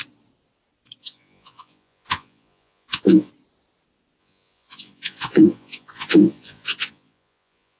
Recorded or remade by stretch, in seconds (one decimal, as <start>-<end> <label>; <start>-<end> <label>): 0.0-1.0 recorded; 1.0-3.3 remade; 3.3-4.2 recorded; 4.2-7.8 remade